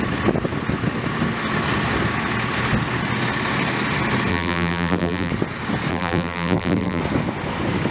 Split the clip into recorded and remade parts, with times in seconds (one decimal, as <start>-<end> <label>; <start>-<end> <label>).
0.0-4.3 recorded; 4.3-5.3 remade; 5.3-5.9 recorded; 5.9-7.0 remade; 7.0-7.9 recorded